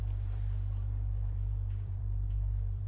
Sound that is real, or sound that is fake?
fake